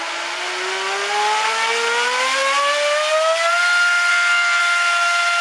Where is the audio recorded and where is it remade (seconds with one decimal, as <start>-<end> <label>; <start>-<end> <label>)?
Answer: 0.0-4.1 recorded; 4.1-4.6 remade; 4.6-5.4 recorded